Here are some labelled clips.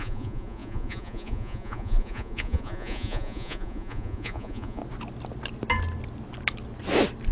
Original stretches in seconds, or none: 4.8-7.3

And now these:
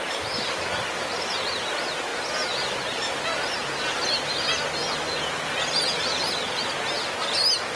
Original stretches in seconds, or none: 0.0-7.8